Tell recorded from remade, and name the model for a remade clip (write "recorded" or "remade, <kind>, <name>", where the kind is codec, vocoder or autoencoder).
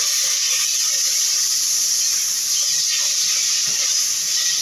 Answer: recorded